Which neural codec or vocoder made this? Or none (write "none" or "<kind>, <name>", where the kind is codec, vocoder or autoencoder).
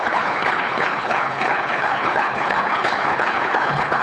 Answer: codec, HILCodec